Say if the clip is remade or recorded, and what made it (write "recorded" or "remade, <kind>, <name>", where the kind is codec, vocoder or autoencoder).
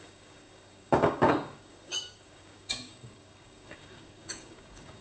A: remade, codec, DAC